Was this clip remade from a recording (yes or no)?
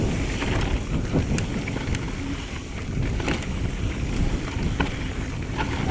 no